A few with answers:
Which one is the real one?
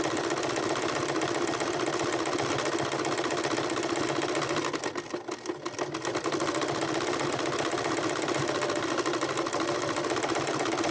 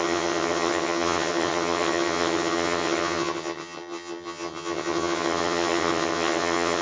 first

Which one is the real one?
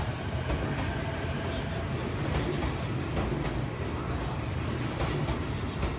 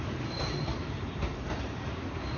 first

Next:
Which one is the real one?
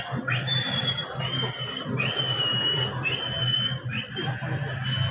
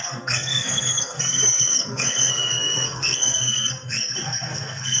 first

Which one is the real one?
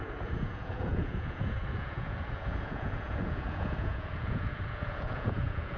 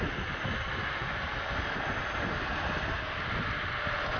second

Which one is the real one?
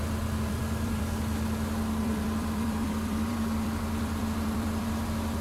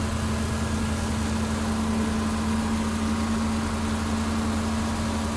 second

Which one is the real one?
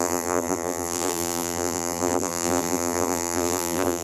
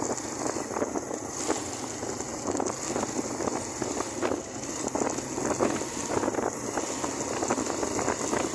second